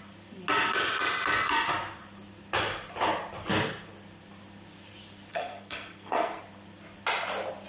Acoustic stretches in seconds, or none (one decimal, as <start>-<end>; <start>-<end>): 0.0-5.3; 6.4-7.7